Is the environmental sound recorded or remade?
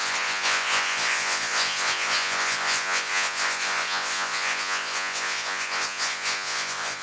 remade